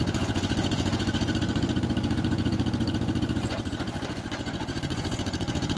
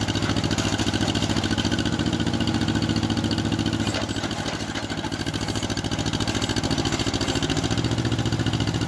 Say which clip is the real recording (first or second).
second